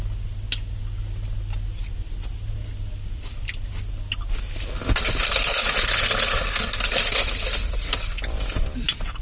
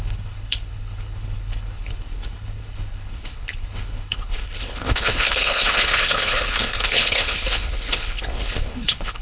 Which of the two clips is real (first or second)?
first